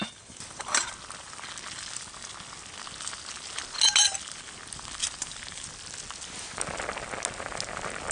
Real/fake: real